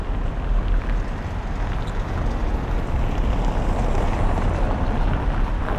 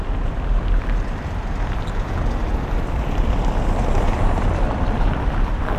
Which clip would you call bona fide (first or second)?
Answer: first